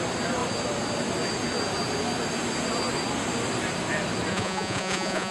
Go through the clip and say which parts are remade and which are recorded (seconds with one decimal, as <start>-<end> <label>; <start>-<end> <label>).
0.0-4.3 recorded; 4.3-5.3 remade